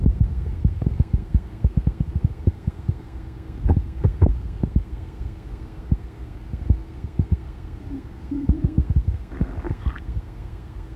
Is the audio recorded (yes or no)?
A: no